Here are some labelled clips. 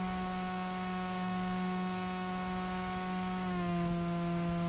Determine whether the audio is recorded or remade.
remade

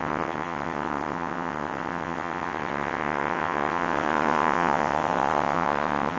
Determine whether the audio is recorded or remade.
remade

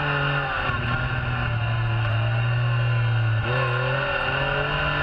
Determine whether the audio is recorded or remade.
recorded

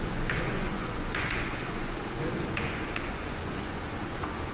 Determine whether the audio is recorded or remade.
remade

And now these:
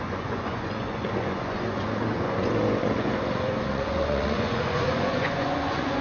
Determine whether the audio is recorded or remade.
remade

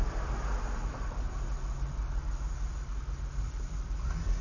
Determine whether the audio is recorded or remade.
recorded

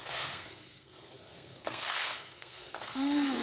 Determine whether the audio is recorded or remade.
remade